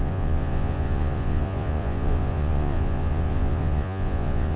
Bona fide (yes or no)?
no